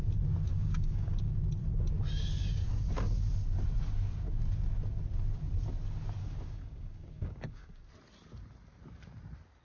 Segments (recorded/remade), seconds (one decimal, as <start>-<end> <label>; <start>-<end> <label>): 0.0-0.5 recorded; 0.5-1.3 remade; 1.3-6.2 recorded; 6.2-7.9 remade; 7.9-9.6 recorded